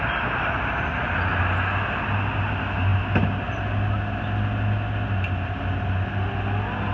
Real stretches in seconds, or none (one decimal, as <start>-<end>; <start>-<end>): 0.0-6.9